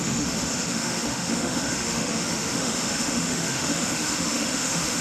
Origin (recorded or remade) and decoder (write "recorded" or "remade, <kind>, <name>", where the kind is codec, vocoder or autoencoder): remade, autoencoder, DAC-VAE